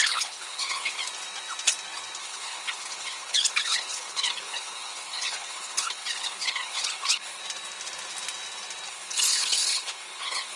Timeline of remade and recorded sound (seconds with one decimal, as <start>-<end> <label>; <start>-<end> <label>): 0.0-1.0 remade; 1.0-2.2 recorded; 2.2-7.4 remade; 7.4-8.9 recorded; 8.9-10.6 remade